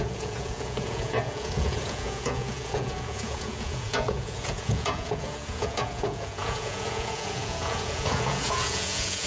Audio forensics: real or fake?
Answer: fake